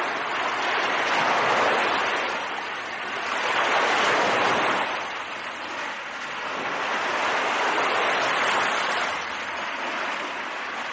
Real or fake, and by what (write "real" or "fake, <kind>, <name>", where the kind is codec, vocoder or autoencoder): real